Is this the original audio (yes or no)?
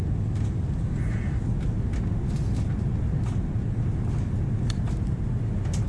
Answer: yes